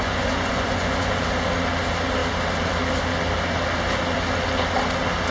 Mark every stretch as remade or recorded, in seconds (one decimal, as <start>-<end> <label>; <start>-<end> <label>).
0.0-1.2 remade; 1.2-5.3 recorded